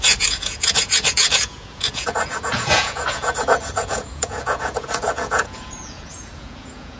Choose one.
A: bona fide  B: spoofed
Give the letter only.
B